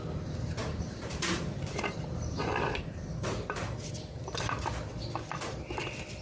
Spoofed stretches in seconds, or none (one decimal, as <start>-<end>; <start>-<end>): 0.6-4.3